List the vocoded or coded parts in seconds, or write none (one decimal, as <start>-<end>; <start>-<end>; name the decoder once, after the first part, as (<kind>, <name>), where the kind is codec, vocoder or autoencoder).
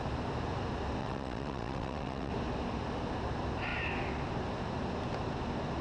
1.0-2.3 (vocoder, WaveNeXt)